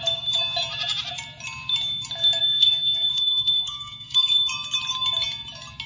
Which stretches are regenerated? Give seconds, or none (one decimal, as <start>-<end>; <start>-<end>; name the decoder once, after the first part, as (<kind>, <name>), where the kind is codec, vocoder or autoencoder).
2.4-4.5 (codec, SNAC)